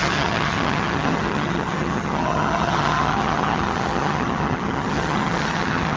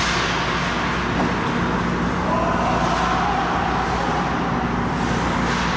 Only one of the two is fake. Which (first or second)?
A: first